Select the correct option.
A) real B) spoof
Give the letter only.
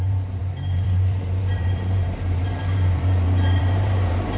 B